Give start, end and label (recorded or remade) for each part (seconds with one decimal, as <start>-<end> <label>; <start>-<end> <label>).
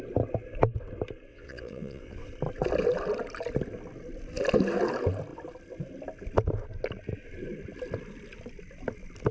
0.0-1.3 recorded; 1.3-2.3 remade; 2.3-9.3 recorded